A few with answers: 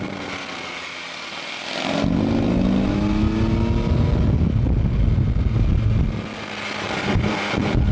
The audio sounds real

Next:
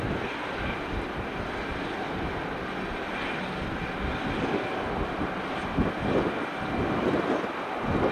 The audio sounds real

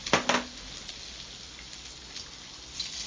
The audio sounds real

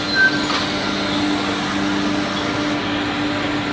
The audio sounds real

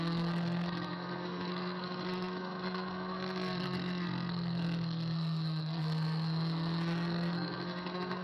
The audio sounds fake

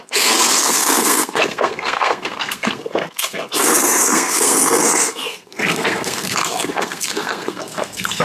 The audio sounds fake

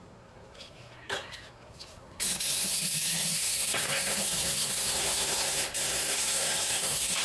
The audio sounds fake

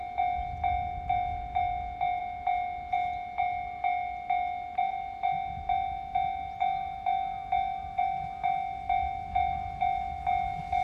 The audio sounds real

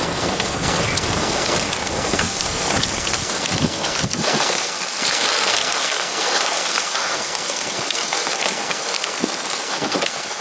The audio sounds fake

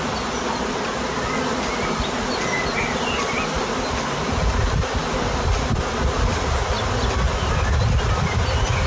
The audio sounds real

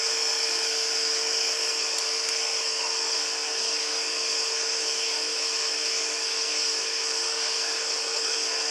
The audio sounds fake